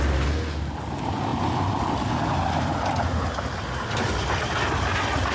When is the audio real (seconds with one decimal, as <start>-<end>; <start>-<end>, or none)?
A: 0.0-5.3